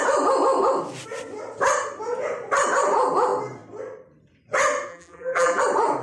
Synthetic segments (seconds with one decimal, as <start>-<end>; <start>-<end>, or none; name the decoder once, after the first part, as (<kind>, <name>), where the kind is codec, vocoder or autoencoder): 4.9-5.6 (vocoder, BigVGAN v2)